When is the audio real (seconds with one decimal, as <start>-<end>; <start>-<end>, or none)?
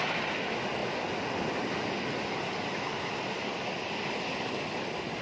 0.0-5.2